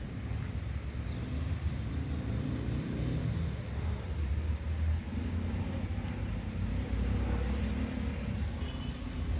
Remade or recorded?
recorded